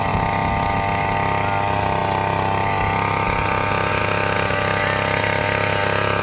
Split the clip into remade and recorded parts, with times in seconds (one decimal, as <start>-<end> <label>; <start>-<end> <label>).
0.0-6.2 recorded